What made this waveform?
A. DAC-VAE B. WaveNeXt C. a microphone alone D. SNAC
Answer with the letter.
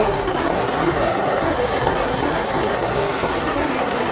D